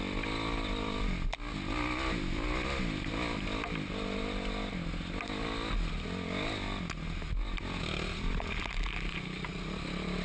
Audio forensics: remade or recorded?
recorded